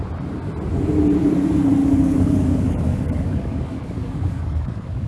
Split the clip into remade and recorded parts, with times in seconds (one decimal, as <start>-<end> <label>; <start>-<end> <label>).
0.0-1.8 recorded; 1.8-5.1 remade